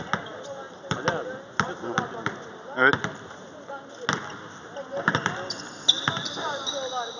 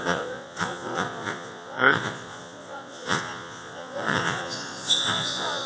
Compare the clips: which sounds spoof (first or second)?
second